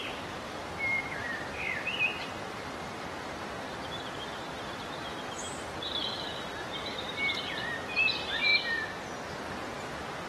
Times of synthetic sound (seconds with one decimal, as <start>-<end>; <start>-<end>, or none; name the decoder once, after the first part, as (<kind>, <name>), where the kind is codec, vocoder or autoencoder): 0.0-8.5 (vocoder, BigVGAN v2); 9.3-10.3